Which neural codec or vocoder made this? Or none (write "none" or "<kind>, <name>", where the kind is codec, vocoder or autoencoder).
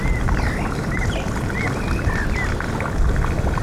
none